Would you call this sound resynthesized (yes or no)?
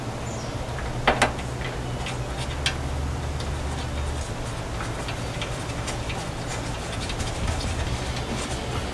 no